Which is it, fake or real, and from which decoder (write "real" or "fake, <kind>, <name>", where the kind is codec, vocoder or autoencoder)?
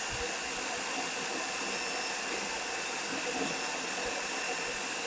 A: real